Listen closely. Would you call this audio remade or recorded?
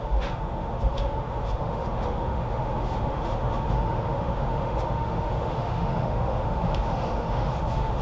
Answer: remade